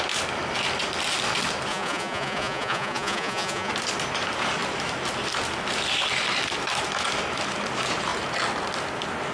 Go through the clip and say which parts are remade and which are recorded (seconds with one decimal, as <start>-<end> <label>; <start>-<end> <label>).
0.0-1.7 recorded; 1.7-3.7 remade; 3.7-9.3 recorded